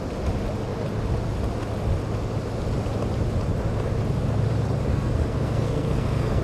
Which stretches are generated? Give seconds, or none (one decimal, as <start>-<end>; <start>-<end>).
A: 4.9-6.4